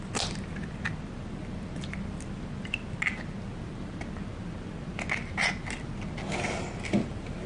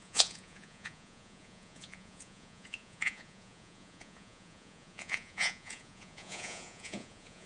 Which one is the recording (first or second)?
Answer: first